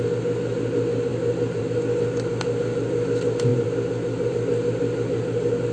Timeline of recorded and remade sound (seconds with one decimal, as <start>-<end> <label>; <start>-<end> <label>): 0.0-3.5 recorded; 3.5-4.3 remade; 4.3-5.7 recorded